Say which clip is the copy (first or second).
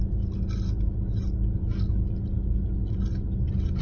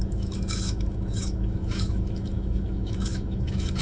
second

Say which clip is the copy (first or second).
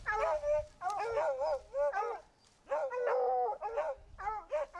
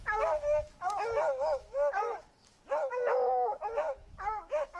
second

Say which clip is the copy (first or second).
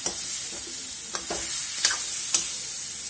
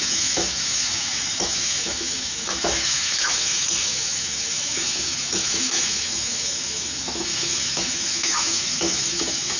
second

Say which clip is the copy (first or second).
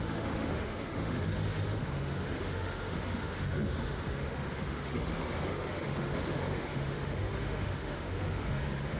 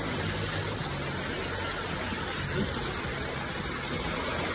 first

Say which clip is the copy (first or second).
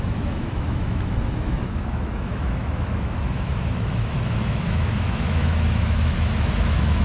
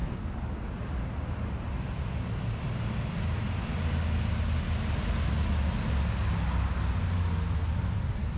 first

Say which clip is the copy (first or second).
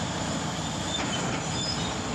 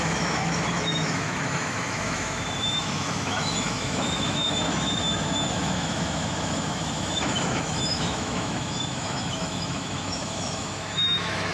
second